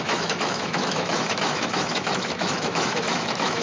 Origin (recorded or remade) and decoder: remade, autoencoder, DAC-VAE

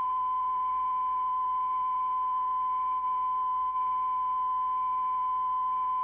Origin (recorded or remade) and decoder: remade, autoencoder, DAC-VAE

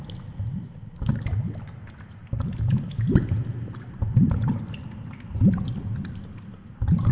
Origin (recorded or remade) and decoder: recorded